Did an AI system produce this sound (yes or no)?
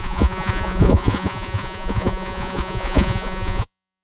yes